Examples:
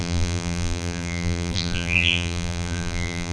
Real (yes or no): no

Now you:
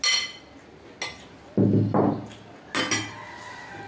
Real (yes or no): yes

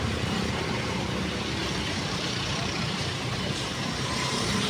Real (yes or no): no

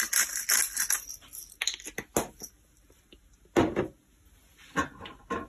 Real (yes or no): yes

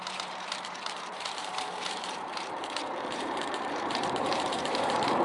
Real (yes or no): no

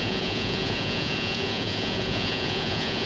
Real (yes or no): no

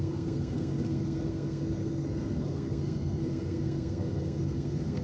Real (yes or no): no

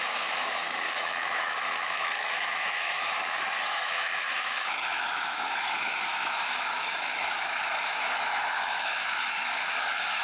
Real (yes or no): no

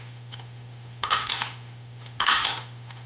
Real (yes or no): no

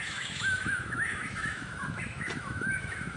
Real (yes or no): no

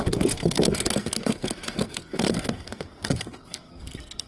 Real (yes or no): no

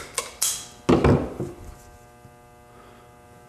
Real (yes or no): yes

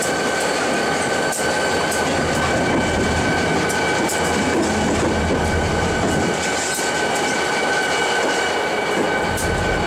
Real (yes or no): yes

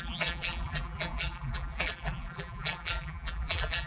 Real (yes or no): no